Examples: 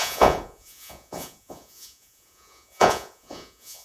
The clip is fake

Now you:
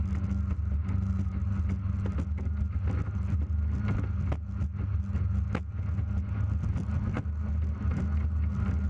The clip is real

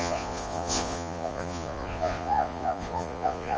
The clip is fake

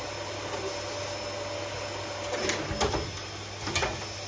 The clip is real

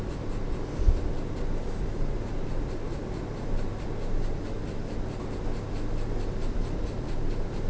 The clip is real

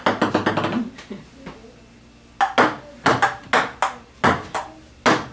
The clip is real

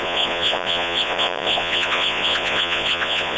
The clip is fake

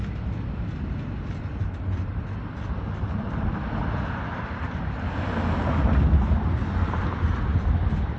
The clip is real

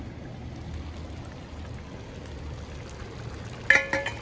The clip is real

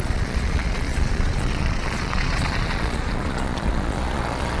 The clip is fake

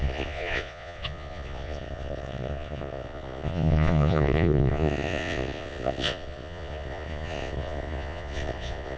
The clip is fake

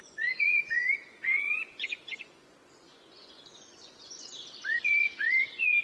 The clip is fake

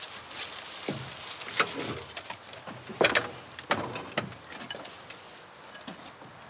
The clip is real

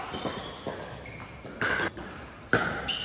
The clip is real